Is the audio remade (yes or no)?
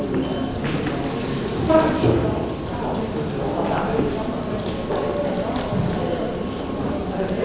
no